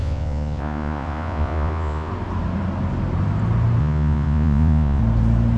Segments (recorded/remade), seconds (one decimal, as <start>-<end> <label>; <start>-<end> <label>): 0.0-2.1 remade; 2.1-3.8 recorded; 3.8-5.0 remade; 5.0-5.6 recorded